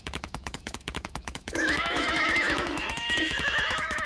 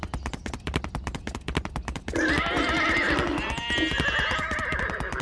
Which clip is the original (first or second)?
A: second